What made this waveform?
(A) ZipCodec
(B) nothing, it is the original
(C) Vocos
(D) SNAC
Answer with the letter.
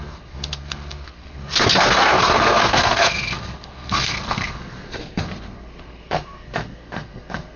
D